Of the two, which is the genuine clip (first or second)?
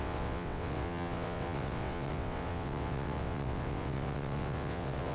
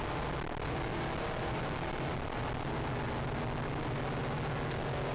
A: second